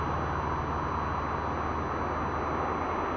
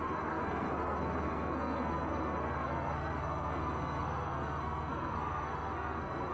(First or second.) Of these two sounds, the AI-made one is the second